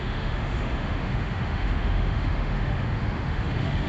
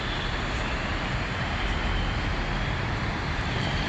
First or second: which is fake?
first